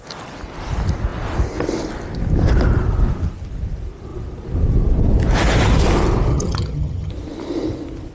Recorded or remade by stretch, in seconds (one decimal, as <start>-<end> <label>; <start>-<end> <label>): 0.0-6.3 recorded; 6.3-7.1 remade; 7.1-8.1 recorded